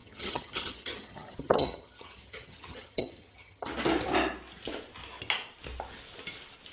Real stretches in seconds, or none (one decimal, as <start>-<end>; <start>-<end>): 3.7-6.7

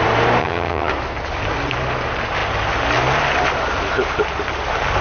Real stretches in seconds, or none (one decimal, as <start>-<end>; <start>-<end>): 0.0-0.4; 0.9-5.0

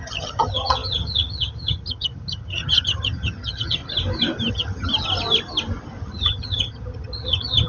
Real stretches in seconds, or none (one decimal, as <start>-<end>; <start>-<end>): 3.8-4.5; 4.9-6.0